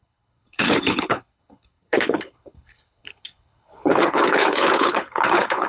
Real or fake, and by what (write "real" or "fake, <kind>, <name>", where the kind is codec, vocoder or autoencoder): fake, codec, HILCodec